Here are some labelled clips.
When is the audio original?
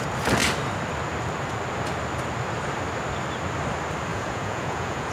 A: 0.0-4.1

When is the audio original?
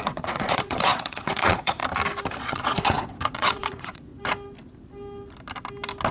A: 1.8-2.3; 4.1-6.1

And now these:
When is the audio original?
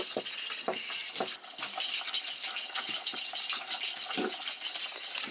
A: 0.0-5.3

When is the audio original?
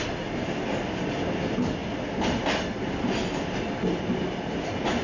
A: 0.0-5.0